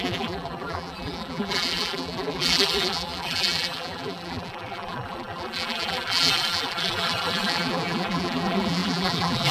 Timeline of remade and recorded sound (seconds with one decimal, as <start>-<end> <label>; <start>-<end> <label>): 0.0-9.5 remade